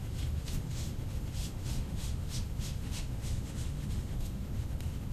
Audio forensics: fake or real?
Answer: fake